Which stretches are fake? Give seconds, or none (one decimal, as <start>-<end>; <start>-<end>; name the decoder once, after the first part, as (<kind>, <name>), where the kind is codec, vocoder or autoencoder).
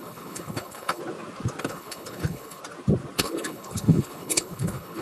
0.0-1.0 (codec, HILCodec); 1.6-2.6; 3.2-5.0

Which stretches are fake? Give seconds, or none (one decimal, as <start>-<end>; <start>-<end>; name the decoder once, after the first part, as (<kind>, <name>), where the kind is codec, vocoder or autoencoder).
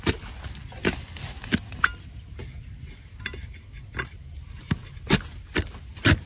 none